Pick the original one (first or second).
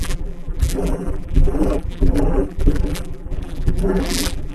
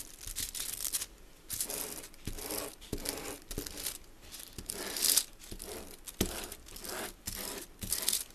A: second